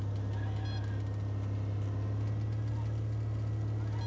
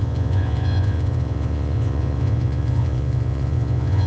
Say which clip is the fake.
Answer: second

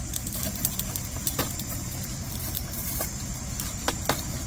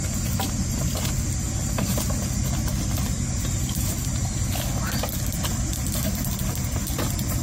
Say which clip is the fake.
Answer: first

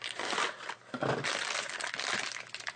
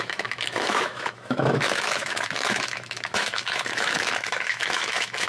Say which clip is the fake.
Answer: second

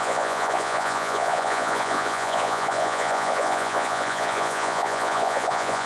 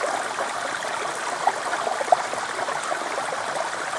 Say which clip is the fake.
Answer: first